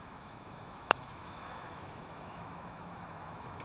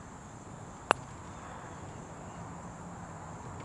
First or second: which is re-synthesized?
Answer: first